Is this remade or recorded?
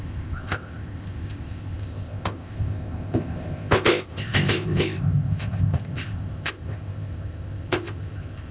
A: remade